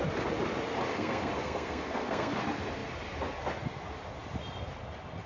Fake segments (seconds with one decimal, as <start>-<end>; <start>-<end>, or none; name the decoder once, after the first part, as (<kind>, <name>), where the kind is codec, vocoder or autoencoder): 0.9-2.4 (codec, SNAC)